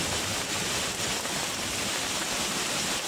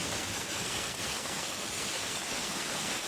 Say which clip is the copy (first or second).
second